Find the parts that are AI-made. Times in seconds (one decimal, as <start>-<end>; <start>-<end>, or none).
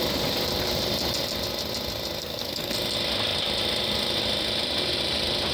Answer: 2.2-2.7